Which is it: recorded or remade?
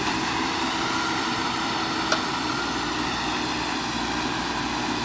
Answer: recorded